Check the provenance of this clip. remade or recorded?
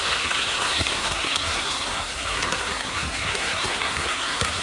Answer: remade